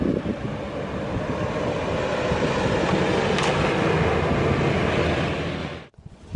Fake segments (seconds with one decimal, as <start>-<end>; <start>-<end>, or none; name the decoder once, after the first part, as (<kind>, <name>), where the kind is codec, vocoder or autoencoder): 5.6-6.4 (vocoder, Vocos)